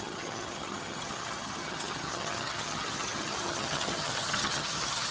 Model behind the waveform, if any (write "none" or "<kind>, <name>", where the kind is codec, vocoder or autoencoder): vocoder, HiFi-GAN